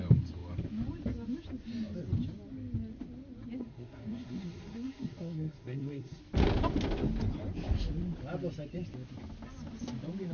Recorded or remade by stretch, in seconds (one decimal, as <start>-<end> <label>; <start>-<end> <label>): 0.0-3.6 recorded; 3.6-6.2 remade; 6.2-10.3 recorded